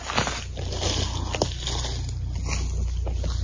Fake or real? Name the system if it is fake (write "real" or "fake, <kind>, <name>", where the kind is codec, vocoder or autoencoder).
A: real